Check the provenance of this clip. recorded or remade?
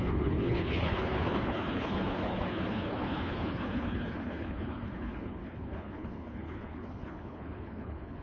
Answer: remade